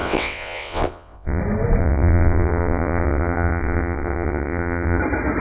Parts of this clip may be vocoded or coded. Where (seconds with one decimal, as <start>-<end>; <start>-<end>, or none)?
0.0-1.4; 1.8-5.0